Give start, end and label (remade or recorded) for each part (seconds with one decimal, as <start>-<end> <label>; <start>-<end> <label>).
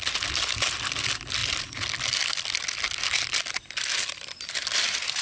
0.0-5.2 recorded